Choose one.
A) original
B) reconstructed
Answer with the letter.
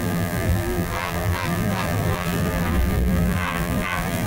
B